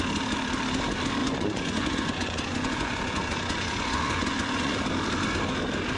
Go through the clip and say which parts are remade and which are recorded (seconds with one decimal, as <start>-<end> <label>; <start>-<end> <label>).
0.0-1.2 recorded; 1.2-4.8 remade; 4.8-6.0 recorded

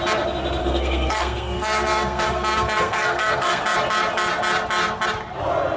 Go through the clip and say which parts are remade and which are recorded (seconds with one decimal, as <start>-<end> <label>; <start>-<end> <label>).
0.0-0.6 recorded; 0.6-3.6 remade; 3.6-5.8 recorded

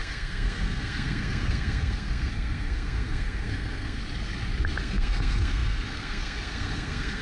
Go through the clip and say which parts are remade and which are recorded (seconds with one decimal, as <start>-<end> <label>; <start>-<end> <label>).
0.0-4.0 remade; 4.0-4.8 recorded; 4.8-7.2 remade

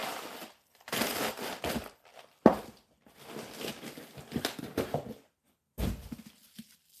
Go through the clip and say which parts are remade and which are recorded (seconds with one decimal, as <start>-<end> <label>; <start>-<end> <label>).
0.0-7.0 recorded

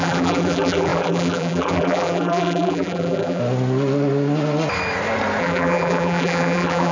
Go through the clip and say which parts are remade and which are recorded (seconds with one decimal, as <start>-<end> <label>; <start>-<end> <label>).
0.0-3.4 remade; 3.4-5.4 recorded; 5.4-6.9 remade